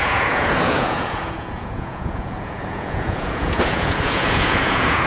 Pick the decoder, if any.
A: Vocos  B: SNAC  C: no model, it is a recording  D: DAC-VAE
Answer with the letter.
A